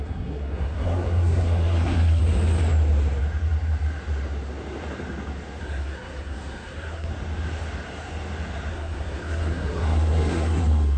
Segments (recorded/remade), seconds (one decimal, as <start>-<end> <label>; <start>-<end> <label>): 0.0-2.2 remade; 2.2-5.6 recorded; 5.6-7.1 remade; 7.1-8.7 recorded; 8.7-11.0 remade